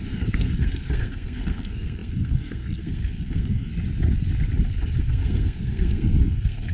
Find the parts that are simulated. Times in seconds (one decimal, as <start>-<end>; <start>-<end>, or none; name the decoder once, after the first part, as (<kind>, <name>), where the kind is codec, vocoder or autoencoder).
0.0-3.7 (codec, SNAC); 5.0-6.7